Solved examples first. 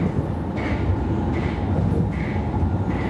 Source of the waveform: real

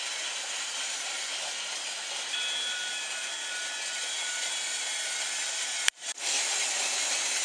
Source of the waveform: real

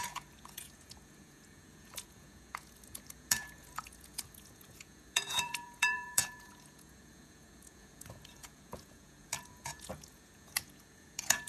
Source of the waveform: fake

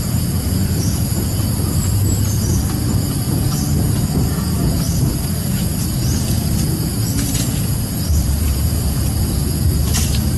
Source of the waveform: fake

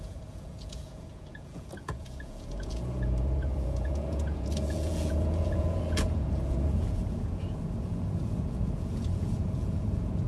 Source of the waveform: fake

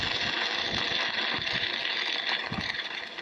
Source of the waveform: real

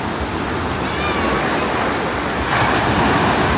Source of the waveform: real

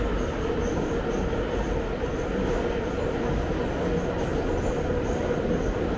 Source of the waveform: real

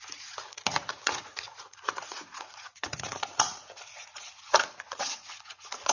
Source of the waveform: fake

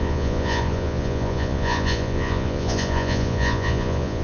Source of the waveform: fake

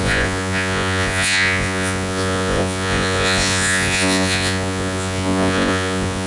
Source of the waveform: fake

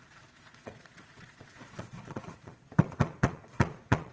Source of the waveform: fake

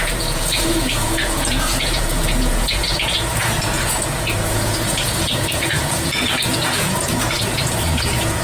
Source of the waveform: fake